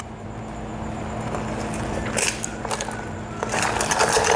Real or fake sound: real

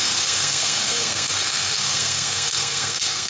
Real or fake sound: fake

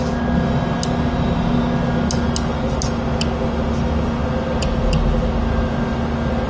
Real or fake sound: real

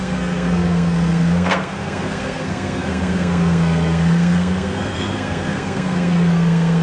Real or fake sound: fake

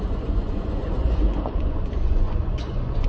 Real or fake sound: fake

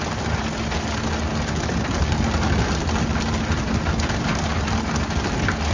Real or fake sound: real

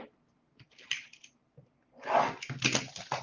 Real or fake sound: real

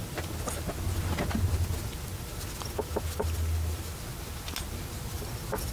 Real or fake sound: real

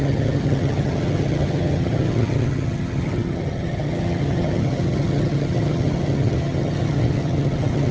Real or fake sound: fake